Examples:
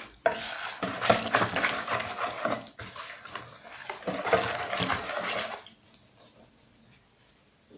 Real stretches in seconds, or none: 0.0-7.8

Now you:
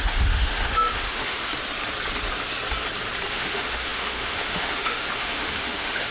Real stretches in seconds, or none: 1.5-3.3

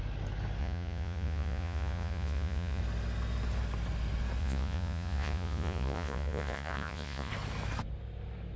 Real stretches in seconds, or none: 0.0-0.6; 2.8-4.4; 7.3-8.6

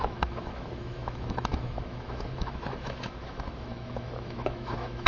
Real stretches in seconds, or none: none

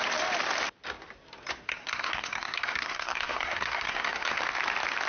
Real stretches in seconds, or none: 0.0-1.7; 4.4-5.1